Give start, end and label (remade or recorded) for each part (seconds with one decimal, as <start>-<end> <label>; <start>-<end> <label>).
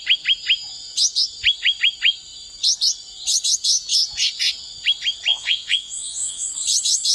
0.0-5.3 recorded; 5.3-6.5 remade; 6.5-7.1 recorded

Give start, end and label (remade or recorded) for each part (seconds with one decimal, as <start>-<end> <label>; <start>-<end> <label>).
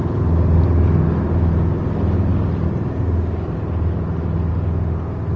0.0-5.4 recorded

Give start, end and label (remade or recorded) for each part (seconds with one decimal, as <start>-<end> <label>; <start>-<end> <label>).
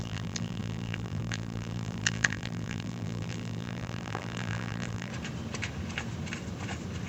0.0-5.1 remade; 5.1-7.1 recorded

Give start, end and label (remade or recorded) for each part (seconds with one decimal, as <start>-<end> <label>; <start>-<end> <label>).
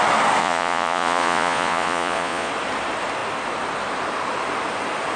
0.0-0.4 recorded; 0.4-2.5 remade; 2.5-5.2 recorded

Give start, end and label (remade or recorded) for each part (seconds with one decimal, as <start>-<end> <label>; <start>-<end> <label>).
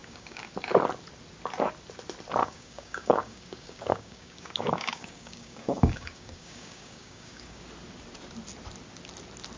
0.0-0.5 remade; 0.5-2.4 recorded; 2.4-7.6 remade; 7.6-9.6 recorded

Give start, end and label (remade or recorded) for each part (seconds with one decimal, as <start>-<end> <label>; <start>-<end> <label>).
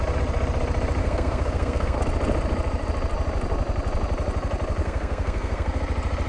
0.0-1.0 recorded; 1.0-2.0 remade; 2.0-4.8 recorded; 4.8-5.8 remade; 5.8-6.3 recorded